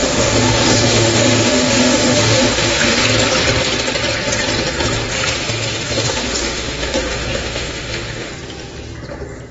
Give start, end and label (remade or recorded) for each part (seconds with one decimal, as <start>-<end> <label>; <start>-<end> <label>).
0.0-3.0 remade; 3.0-5.1 recorded; 5.1-8.3 remade; 8.3-9.5 recorded